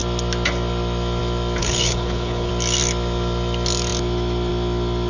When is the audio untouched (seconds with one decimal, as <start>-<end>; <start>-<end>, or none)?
0.0-1.6; 2.5-5.1